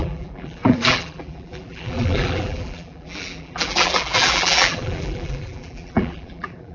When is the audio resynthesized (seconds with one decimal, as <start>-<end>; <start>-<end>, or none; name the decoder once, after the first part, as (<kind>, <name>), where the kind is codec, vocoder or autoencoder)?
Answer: 0.0-6.7 (vocoder, BigVGAN v2)